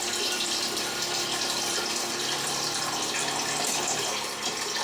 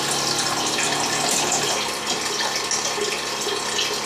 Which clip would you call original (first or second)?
second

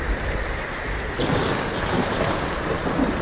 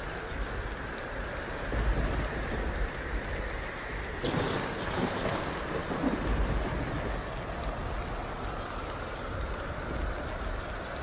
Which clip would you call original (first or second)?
second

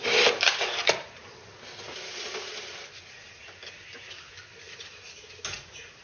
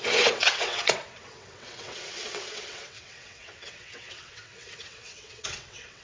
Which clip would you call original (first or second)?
first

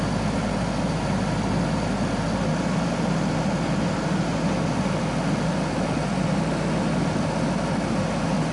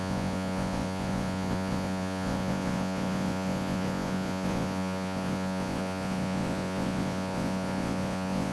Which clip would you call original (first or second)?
first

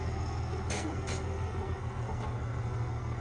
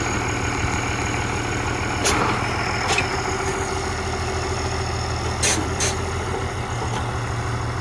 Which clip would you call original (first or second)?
second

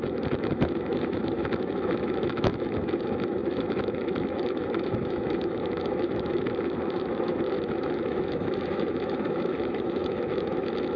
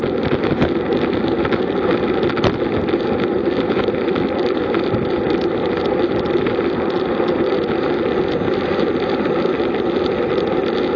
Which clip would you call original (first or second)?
second